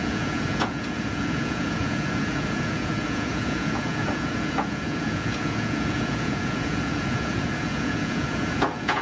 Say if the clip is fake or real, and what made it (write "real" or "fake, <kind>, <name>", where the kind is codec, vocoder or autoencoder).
fake, vocoder, Vocos